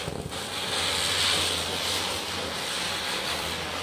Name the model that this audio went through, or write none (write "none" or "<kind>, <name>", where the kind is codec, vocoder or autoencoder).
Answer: none